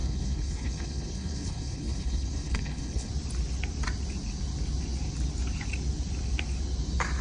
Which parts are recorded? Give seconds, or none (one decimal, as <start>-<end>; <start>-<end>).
3.1-7.2